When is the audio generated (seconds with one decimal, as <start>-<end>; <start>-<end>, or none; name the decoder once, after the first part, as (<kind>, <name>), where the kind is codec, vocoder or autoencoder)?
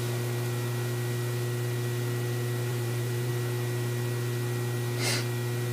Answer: 2.7-3.3 (vocoder, BigVGAN v2)